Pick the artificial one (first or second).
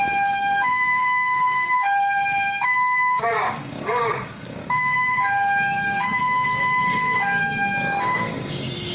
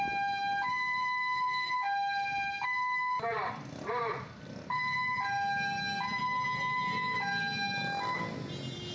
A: first